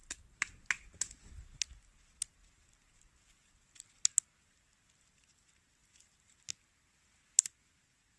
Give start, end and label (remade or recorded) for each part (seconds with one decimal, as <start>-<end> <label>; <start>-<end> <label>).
0.0-8.2 recorded